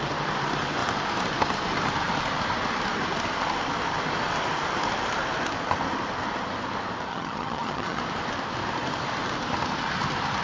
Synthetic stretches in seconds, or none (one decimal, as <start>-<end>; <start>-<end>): 7.1-8.0